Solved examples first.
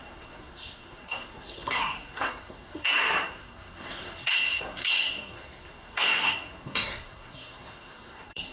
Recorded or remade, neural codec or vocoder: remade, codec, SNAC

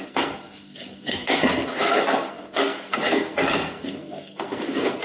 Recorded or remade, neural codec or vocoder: remade, codec, SNAC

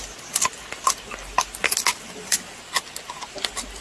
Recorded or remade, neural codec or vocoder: recorded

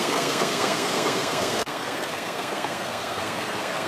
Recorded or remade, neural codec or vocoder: remade, codec, SNAC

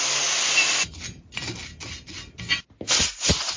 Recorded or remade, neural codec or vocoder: recorded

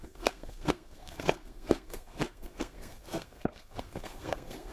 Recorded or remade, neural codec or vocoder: remade, codec, SNAC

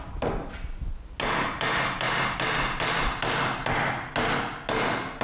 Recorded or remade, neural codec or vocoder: recorded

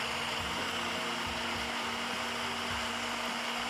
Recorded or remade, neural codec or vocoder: recorded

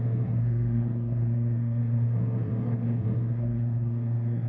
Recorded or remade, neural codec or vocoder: remade, codec, SNAC